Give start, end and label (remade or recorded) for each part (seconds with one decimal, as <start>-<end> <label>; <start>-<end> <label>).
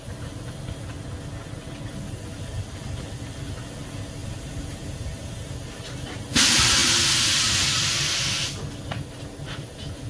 0.0-4.2 recorded; 4.2-5.8 remade; 5.8-10.1 recorded